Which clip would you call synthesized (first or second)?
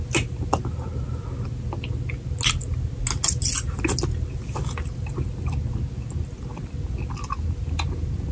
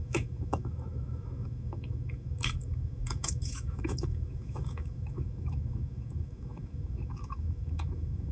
second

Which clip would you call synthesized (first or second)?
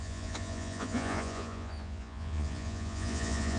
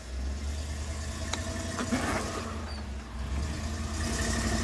first